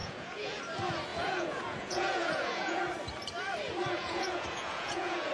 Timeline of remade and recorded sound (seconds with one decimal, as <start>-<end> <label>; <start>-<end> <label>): 0.0-0.6 remade; 0.6-1.1 recorded; 1.1-2.8 remade; 2.8-4.0 recorded; 4.0-5.3 remade